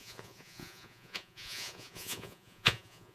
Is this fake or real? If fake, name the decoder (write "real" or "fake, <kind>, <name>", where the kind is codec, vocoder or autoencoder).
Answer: fake, vocoder, Vocos